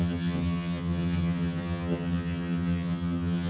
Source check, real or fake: fake